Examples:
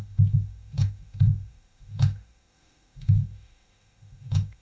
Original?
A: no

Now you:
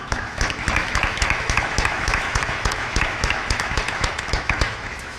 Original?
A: no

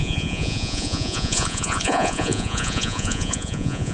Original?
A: no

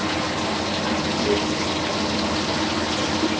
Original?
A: yes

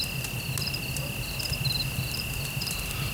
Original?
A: yes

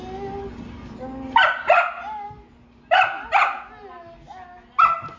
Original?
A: yes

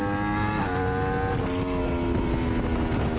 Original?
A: yes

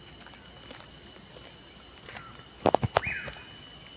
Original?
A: yes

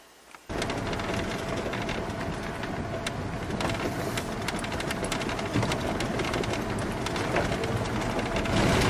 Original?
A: yes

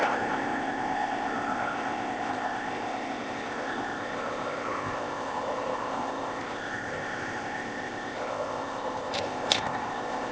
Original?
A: no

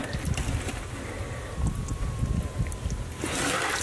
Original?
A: yes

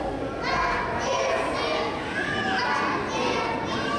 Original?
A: yes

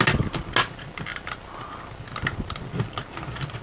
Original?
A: yes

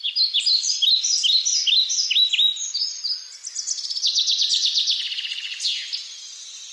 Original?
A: yes